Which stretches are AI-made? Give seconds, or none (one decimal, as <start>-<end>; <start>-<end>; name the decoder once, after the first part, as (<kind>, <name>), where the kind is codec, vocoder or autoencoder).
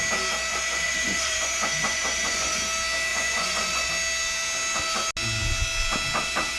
0.5-2.6 (vocoder, Vocos); 3.1-3.9